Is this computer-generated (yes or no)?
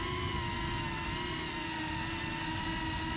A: no